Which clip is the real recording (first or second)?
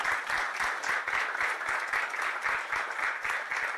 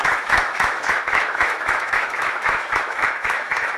first